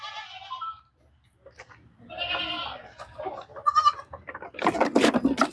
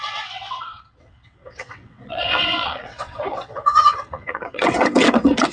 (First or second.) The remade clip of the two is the second